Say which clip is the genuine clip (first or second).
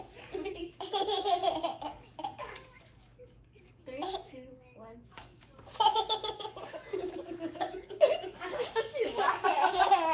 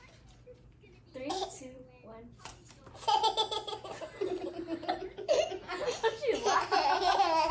second